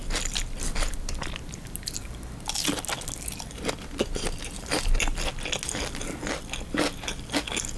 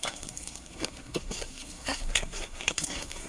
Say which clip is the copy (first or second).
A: second